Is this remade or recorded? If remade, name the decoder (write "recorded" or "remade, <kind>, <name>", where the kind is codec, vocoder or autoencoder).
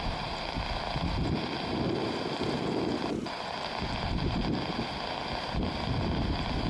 recorded